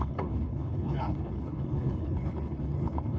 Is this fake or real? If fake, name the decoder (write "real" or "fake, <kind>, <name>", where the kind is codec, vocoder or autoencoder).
fake, codec, HILCodec